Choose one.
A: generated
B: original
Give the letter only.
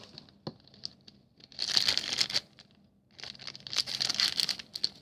B